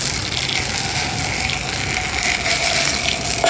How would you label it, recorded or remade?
recorded